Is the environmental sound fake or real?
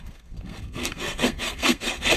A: fake